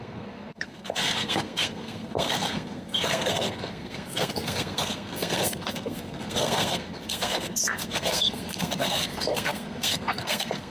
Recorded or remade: remade